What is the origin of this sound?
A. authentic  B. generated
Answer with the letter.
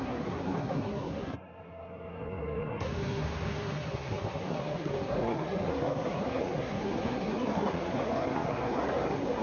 B